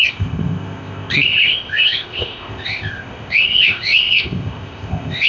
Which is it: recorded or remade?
remade